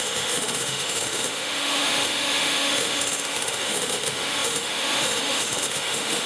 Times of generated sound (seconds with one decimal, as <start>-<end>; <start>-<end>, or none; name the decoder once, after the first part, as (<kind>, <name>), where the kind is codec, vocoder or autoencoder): 0.0-6.3 (autoencoder, DAC-VAE)